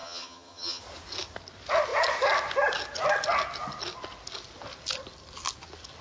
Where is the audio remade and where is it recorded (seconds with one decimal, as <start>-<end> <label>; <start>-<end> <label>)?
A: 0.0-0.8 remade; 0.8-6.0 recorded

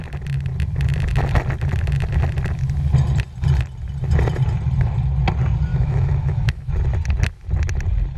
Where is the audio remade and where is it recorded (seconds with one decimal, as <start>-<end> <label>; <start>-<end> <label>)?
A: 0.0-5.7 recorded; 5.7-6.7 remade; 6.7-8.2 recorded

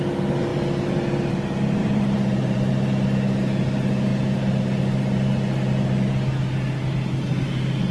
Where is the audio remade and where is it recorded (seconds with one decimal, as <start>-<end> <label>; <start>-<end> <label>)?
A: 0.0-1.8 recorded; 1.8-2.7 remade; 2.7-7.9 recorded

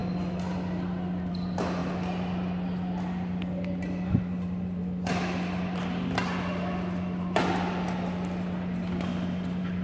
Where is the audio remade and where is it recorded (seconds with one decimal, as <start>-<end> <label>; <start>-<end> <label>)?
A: 0.0-1.3 recorded; 1.3-9.8 remade

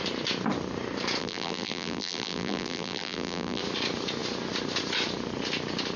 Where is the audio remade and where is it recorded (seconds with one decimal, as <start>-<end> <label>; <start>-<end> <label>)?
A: 0.0-1.2 recorded; 1.2-3.6 remade; 3.6-6.0 recorded

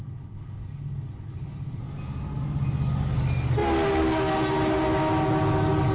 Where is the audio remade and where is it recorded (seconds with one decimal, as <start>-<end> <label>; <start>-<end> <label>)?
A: 0.0-1.8 remade; 1.8-5.9 recorded